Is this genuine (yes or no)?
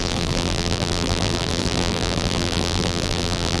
no